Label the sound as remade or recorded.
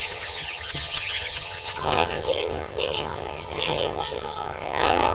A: remade